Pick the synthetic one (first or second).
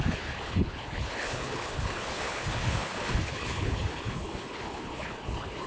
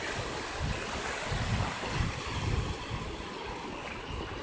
first